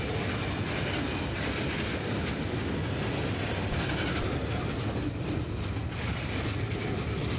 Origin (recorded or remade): recorded